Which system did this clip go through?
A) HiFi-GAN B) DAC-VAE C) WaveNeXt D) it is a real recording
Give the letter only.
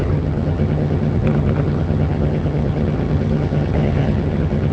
A